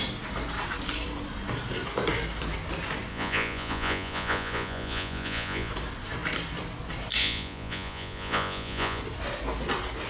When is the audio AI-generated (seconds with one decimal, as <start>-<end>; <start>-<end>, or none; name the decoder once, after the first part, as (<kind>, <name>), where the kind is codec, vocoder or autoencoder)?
3.1-5.7 (vocoder, Vocos); 7.2-9.0